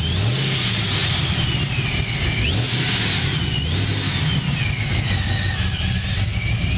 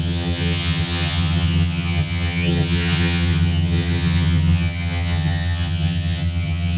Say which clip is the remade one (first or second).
second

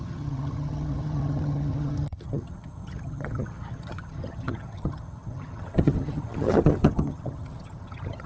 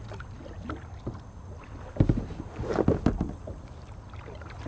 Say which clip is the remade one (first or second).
first